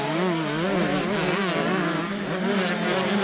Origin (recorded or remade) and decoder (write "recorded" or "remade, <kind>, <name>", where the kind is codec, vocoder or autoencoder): recorded